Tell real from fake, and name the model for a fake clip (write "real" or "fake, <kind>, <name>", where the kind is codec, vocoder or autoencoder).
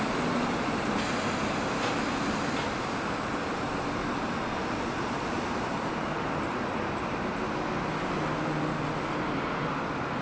real